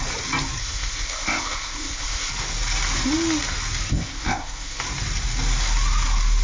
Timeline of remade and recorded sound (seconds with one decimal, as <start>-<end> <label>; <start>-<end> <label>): 0.0-0.6 recorded; 0.6-2.3 remade; 2.3-3.9 recorded; 3.9-4.8 remade; 4.8-6.4 recorded